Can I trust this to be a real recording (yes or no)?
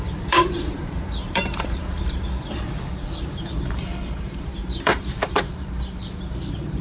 no